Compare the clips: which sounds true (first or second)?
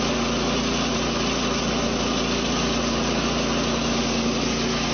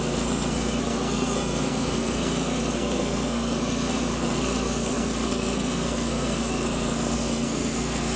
first